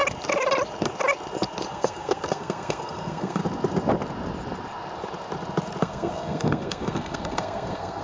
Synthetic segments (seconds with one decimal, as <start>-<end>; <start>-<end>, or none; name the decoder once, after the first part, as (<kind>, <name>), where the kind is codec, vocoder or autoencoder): 1.7-3.4 (codec, SNAC); 5.8-8.0